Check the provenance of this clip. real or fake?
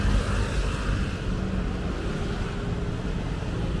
real